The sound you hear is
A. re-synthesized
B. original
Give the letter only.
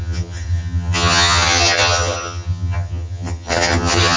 A